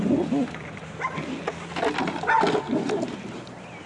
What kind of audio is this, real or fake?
real